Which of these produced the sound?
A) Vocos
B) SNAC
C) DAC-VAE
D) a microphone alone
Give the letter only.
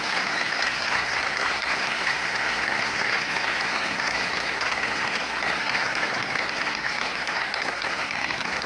B